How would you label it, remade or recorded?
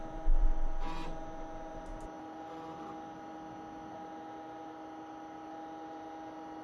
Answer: recorded